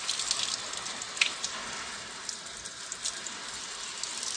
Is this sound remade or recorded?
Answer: recorded